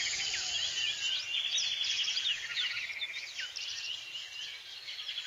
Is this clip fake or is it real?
real